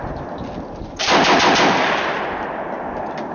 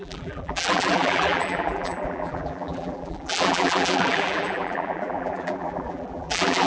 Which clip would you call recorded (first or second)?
first